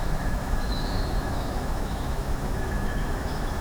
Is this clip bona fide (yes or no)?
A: no